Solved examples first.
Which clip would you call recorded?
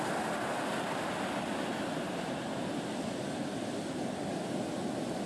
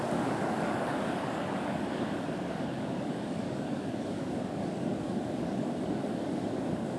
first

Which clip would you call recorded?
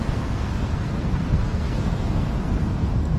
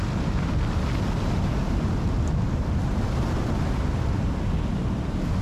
second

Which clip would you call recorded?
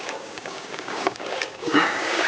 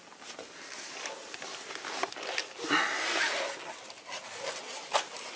second